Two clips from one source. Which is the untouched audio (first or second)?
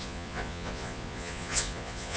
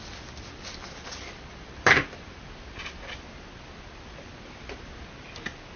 second